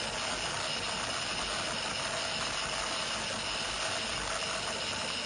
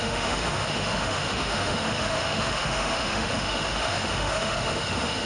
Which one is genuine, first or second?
first